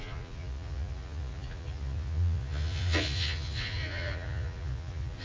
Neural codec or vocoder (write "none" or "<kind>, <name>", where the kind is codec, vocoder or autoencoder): vocoder, Vocos